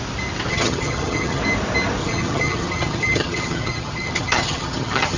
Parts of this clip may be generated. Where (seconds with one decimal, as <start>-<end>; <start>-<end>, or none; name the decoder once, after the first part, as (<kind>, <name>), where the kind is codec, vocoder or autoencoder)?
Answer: 0.5-1.4 (vocoder, HiFi-GAN); 2.0-5.2